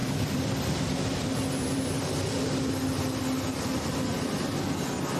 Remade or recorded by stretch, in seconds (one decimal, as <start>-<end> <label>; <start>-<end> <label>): 0.0-2.7 remade; 2.7-5.2 recorded